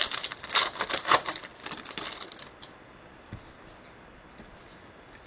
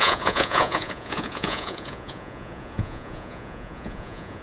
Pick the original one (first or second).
first